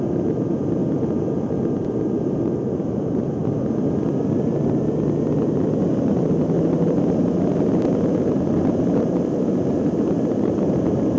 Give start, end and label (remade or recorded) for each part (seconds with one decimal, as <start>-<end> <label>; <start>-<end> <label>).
0.0-0.8 remade; 0.8-1.9 recorded; 1.9-3.4 remade; 3.4-5.9 recorded; 5.9-11.2 remade